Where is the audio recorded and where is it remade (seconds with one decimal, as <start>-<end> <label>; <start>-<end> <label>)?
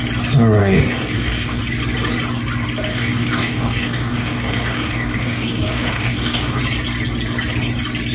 0.0-0.6 recorded; 0.6-1.6 remade; 1.6-2.9 recorded; 2.9-6.6 remade; 6.6-8.1 recorded